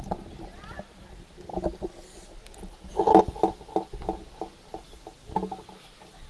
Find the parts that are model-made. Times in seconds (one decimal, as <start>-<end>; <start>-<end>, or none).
none